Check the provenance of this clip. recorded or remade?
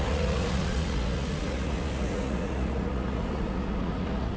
remade